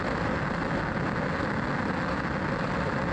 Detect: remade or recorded recorded